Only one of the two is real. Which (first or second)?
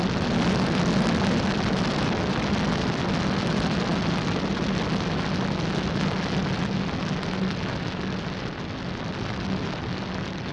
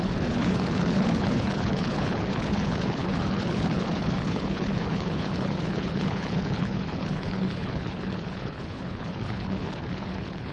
first